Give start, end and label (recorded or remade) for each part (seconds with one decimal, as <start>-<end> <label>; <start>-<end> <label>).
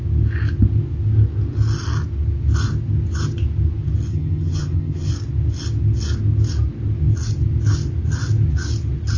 0.0-4.1 recorded; 4.1-5.1 remade; 5.1-9.2 recorded